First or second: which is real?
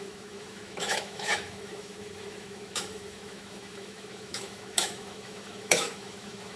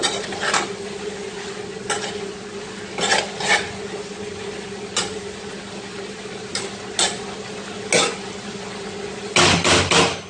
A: second